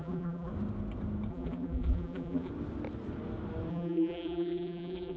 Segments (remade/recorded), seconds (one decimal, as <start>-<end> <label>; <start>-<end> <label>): 0.0-0.5 remade; 0.5-1.3 recorded; 1.3-2.5 remade; 2.5-3.7 recorded; 3.7-5.2 remade